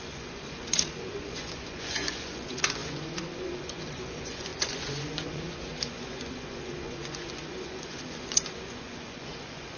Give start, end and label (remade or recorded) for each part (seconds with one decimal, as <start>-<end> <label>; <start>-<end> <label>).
0.0-9.8 remade